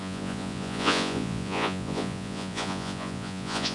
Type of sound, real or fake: fake